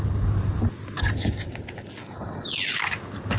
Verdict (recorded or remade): recorded